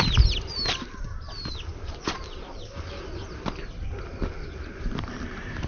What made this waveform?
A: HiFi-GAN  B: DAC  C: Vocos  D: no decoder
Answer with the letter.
D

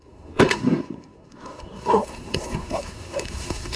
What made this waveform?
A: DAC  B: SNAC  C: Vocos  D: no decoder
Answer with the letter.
B